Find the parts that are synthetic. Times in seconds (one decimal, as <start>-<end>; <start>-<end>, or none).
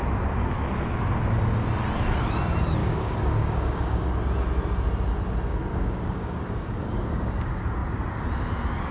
2.8-4.1; 5.7-7.3